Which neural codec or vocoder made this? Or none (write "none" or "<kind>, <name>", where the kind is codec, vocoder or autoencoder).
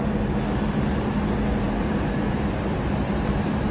none